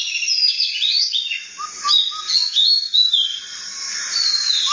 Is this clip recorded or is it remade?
recorded